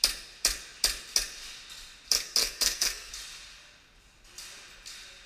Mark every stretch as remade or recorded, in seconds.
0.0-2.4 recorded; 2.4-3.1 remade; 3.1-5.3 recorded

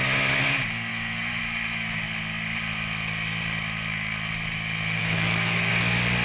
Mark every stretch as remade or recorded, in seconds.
0.0-0.9 recorded; 0.9-1.4 remade; 1.4-5.0 recorded; 5.0-5.7 remade; 5.7-6.2 recorded

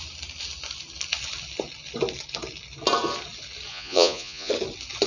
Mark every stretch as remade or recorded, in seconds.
0.0-3.7 recorded; 3.7-4.5 remade; 4.5-5.1 recorded

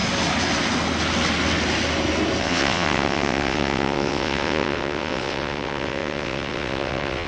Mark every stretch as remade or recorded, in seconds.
0.0-2.4 recorded; 2.4-7.3 remade